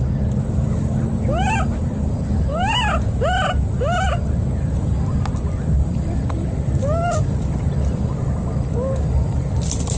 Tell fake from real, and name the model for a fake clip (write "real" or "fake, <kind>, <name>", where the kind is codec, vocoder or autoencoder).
real